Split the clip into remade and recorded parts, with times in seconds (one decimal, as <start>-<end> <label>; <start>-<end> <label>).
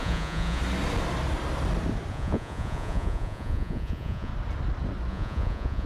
0.0-0.6 remade; 0.6-2.1 recorded; 2.1-4.3 remade; 4.3-5.1 recorded; 5.1-5.9 remade